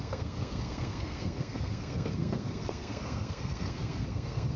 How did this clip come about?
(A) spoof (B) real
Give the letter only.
A